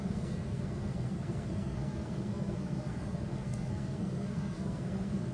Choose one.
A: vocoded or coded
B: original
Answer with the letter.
A